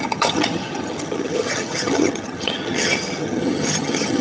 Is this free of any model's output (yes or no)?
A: no